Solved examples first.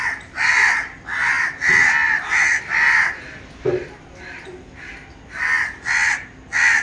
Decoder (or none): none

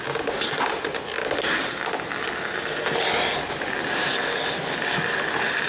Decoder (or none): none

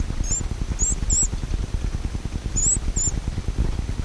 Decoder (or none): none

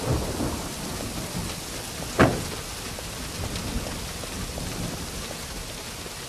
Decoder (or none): none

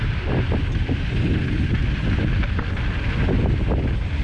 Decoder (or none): none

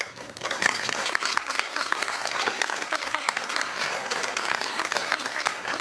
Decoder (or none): codec, SNAC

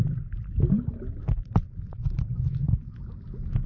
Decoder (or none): none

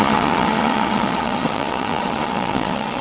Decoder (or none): vocoder, Vocos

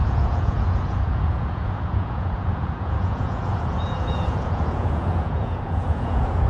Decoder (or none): vocoder, Vocos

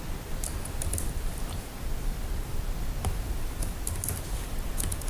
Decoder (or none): none